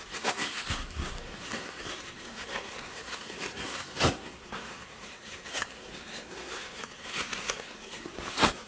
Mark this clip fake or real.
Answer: fake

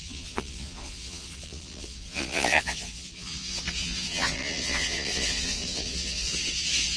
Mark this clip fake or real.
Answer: fake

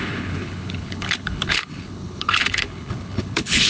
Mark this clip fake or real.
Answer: fake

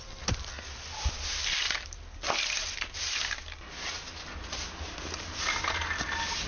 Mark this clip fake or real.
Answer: real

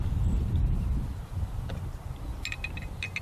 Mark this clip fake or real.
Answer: real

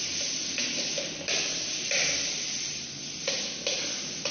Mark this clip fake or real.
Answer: real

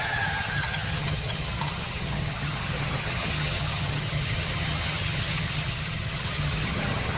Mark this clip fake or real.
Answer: fake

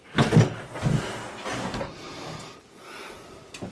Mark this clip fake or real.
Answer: real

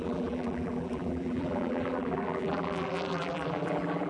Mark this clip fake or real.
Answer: fake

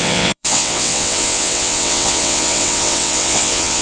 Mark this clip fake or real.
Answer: fake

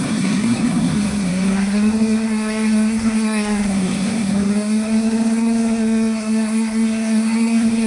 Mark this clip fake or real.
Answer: fake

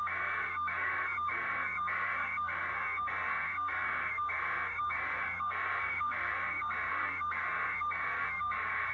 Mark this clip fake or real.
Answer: fake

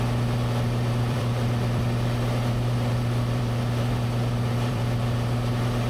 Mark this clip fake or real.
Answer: fake